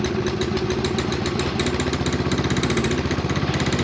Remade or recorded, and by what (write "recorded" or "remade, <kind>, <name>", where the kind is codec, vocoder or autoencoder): recorded